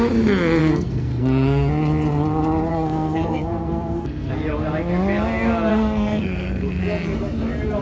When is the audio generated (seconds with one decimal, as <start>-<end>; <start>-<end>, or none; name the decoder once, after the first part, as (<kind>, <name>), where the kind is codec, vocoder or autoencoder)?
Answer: 0.6-1.7 (codec, SNAC); 2.7-4.3; 5.7-6.8